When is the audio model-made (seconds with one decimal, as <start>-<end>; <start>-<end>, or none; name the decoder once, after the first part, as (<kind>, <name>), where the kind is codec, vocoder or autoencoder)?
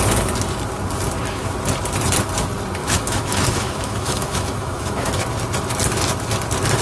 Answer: 2.8-5.1 (autoencoder, DAC-VAE)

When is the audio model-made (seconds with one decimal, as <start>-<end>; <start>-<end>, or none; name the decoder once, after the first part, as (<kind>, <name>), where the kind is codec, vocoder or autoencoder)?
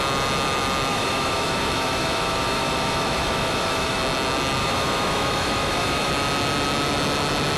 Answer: 0.9-4.0 (autoencoder, DAC-VAE); 4.6-6.1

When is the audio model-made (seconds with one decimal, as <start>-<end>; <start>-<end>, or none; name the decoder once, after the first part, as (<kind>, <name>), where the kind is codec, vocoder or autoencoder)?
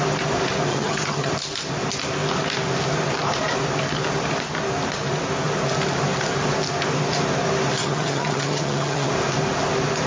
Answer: 0.7-1.3 (vocoder, HiFi-GAN); 7.8-9.1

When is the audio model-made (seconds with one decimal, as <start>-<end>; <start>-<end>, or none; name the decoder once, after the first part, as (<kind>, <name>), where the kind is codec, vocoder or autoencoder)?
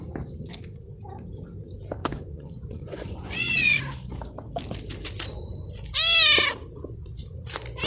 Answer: 2.0-3.8 (vocoder, Vocos)